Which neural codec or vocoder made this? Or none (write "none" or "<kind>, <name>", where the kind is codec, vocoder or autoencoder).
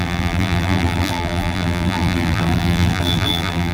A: vocoder, BigVGAN v2